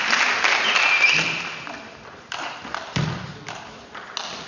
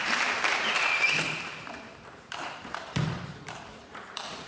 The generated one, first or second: second